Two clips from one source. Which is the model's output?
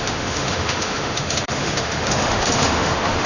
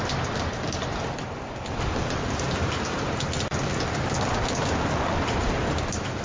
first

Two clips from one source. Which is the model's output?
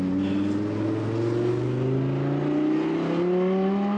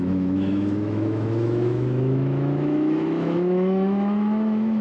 second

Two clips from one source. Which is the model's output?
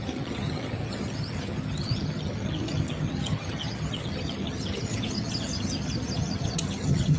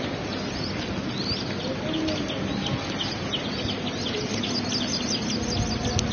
first